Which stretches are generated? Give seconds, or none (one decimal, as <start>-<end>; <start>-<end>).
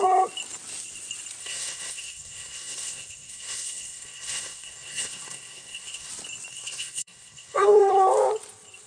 1.4-6.1; 6.5-7.9